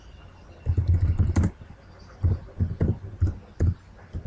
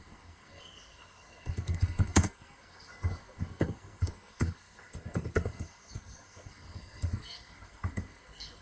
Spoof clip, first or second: second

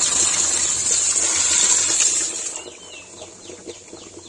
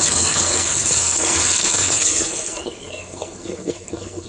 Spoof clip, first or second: second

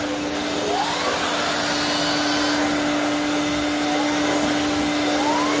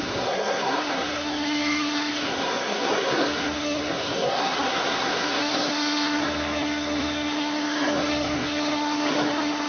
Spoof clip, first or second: second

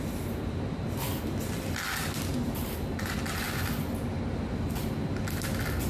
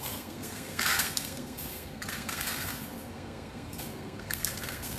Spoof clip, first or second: second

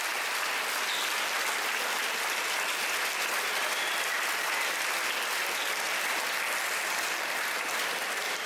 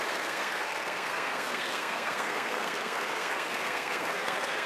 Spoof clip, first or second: second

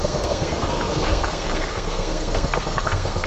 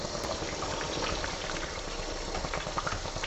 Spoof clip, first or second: first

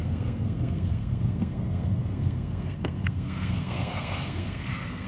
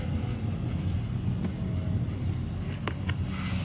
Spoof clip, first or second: first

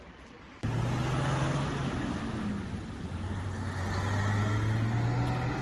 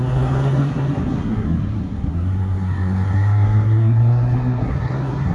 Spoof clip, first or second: second